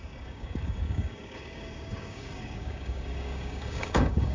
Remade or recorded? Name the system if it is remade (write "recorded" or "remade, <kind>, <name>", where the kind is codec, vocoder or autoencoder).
remade, codec, DAC